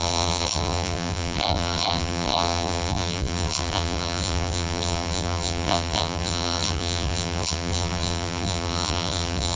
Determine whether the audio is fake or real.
fake